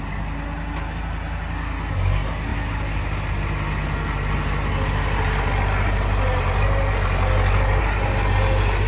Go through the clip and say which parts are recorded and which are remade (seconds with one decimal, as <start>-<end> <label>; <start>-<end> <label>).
0.0-8.9 recorded